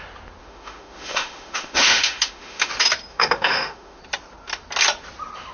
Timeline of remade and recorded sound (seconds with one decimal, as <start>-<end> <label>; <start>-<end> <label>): 0.0-0.4 recorded; 0.4-2.7 remade; 2.7-3.1 recorded; 3.1-4.0 remade; 4.0-5.5 recorded